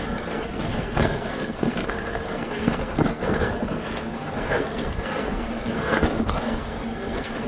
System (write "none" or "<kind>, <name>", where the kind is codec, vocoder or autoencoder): codec, SNAC